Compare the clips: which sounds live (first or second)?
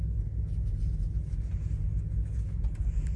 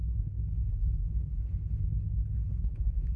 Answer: first